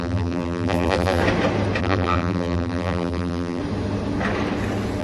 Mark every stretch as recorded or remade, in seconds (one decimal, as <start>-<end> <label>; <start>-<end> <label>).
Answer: 0.0-1.2 remade; 1.2-1.8 recorded; 1.8-3.6 remade; 3.6-5.0 recorded